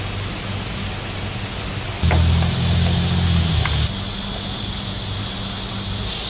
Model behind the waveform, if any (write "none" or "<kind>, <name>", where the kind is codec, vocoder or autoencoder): none